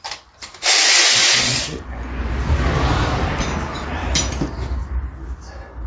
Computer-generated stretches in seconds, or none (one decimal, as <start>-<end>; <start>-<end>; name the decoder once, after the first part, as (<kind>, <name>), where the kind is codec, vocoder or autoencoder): 0.8-2.3 (vocoder, Vocos)